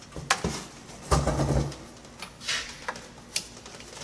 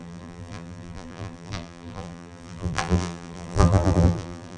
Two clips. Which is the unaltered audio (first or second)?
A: first